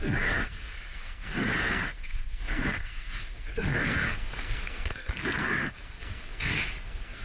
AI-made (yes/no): yes